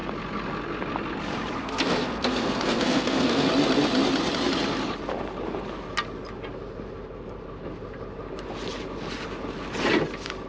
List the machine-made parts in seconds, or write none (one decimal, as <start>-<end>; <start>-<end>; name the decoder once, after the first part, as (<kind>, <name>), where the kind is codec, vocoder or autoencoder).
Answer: 1.6-3.5 (codec, SNAC)